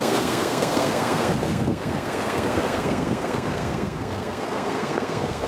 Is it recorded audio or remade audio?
remade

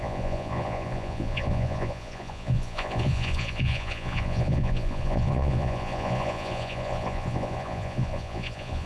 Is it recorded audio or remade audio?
remade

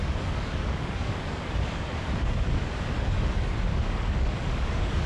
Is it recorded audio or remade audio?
remade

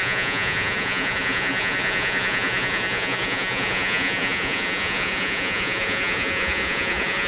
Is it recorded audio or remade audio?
remade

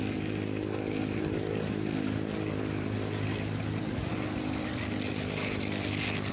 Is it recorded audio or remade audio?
recorded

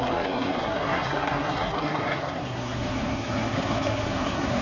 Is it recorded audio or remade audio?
remade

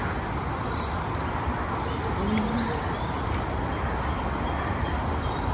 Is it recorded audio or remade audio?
recorded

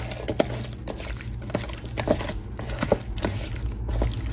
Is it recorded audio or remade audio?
recorded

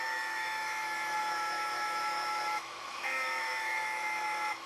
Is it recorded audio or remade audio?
remade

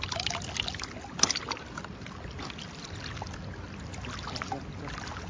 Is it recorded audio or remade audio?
recorded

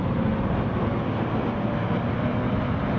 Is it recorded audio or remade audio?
recorded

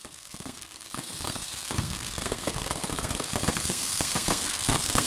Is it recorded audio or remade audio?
remade